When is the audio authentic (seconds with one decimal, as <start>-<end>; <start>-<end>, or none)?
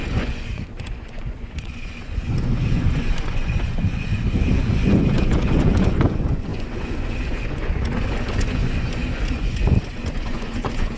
none